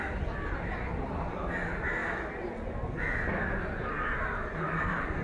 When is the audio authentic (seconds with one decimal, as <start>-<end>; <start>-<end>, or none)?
0.0-5.2